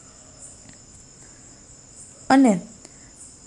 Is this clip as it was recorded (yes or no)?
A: yes